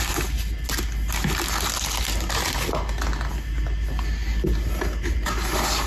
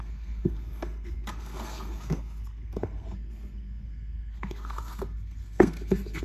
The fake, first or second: second